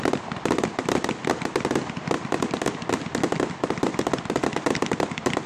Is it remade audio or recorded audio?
remade